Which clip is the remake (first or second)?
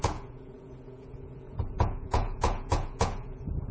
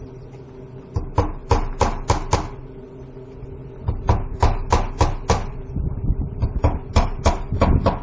first